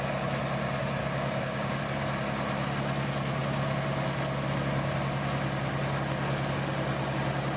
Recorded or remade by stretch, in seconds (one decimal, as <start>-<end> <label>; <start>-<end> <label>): 0.0-1.0 recorded; 1.0-1.8 remade; 1.8-7.6 recorded